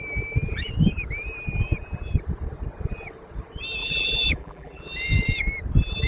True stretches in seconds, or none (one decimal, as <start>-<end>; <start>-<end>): 0.0-3.8; 4.8-6.1